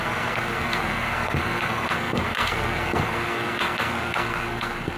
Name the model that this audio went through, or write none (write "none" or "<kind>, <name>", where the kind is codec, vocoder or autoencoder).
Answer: codec, SNAC